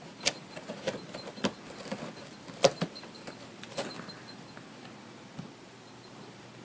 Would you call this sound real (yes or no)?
no